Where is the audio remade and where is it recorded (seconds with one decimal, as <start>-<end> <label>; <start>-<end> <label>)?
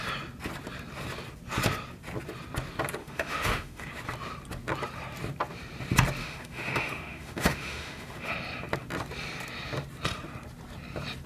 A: 0.0-3.0 recorded; 3.0-3.9 remade; 3.9-6.2 recorded; 6.2-8.3 remade; 8.3-11.3 recorded